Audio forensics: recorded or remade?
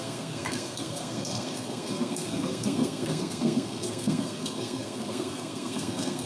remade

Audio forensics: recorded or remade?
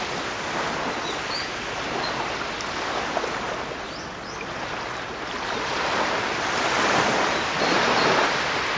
recorded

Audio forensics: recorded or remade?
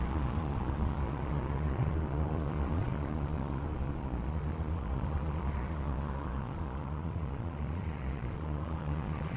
remade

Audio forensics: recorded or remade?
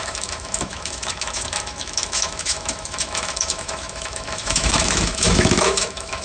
remade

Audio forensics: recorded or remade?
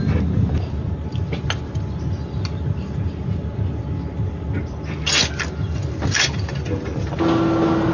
recorded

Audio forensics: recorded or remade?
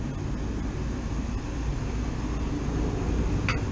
recorded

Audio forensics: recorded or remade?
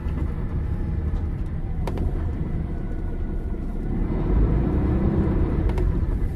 remade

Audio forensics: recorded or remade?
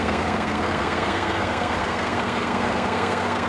remade